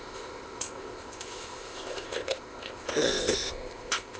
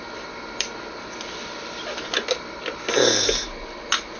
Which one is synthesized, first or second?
first